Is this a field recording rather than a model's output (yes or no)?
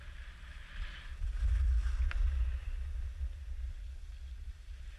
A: yes